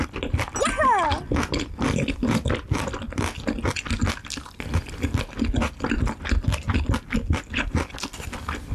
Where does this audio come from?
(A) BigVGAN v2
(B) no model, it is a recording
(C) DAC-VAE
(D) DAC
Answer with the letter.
B